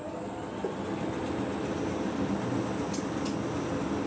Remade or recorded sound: recorded